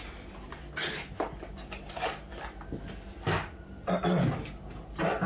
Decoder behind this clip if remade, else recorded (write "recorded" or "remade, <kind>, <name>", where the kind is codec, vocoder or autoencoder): recorded